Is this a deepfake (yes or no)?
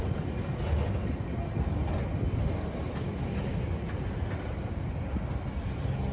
no